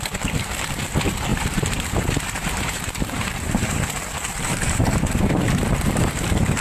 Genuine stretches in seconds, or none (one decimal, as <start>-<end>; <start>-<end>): 0.0-1.3; 5.3-6.6